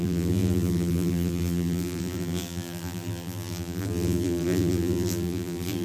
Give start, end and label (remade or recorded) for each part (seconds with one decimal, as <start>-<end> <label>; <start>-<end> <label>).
0.0-5.8 remade